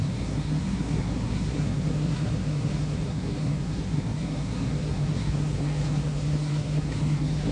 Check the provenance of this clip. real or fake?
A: fake